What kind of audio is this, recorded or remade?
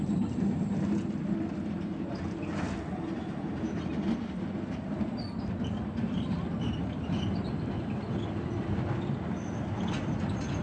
recorded